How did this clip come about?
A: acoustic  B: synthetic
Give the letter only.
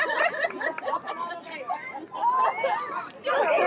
A